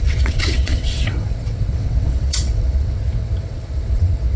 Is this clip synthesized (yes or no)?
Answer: yes